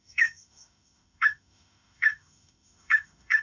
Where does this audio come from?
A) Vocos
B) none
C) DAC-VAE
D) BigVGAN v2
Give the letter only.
C